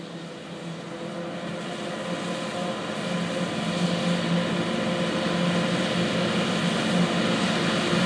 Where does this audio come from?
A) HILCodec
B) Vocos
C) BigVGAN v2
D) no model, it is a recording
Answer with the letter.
D